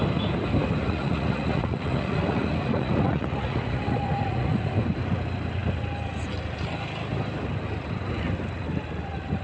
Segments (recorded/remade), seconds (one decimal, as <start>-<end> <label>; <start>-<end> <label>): 0.0-0.8 recorded; 0.8-4.7 remade; 4.7-9.4 recorded